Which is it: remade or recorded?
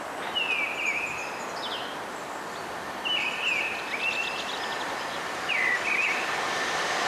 recorded